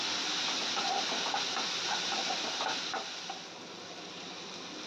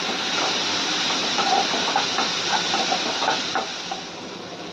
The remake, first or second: second